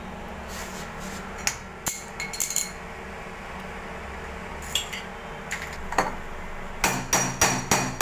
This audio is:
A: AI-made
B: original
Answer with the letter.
B